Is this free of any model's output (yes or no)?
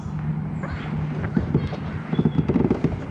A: yes